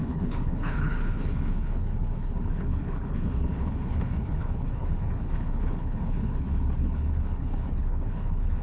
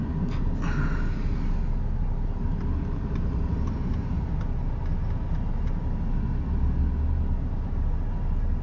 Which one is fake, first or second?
first